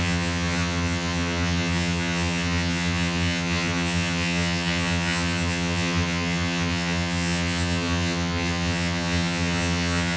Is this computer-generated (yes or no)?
yes